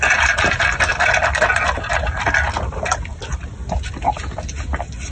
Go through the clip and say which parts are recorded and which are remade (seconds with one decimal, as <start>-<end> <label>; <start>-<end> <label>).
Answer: 0.0-5.1 recorded